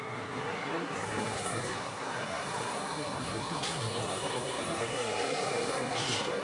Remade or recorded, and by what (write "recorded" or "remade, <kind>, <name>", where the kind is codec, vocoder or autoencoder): remade, codec, SNAC